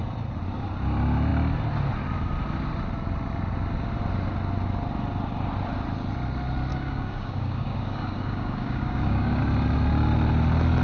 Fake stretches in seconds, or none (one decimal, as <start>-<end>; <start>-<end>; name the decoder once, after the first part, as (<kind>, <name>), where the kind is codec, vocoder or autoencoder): 6.7-9.4 (codec, DAC)